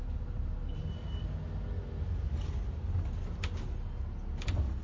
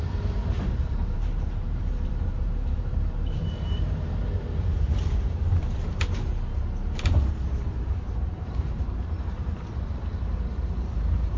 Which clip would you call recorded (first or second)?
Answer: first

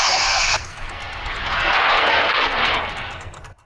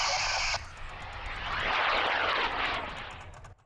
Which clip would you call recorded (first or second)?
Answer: second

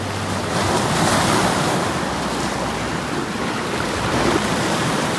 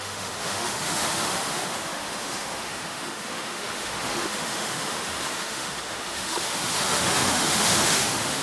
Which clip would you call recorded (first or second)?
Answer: first